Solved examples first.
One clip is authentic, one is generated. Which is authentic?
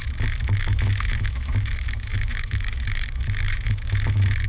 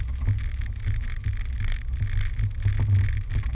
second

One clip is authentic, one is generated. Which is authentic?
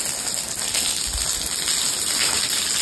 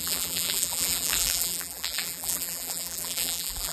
first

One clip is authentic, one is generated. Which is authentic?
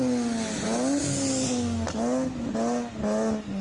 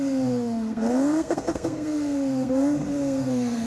first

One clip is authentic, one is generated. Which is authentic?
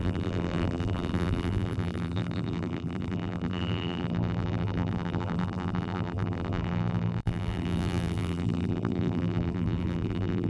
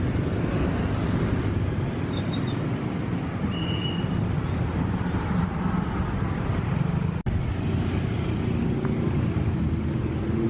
second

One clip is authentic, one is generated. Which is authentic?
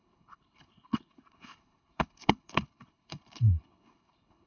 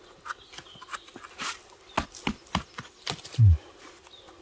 second